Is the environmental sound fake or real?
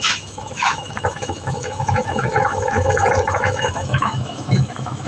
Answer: fake